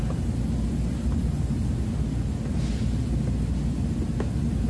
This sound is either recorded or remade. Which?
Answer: recorded